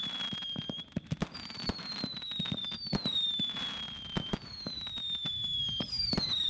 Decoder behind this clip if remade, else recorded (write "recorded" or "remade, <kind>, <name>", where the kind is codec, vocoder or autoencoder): recorded